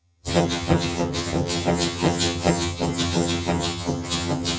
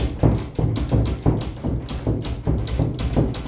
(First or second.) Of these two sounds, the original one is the second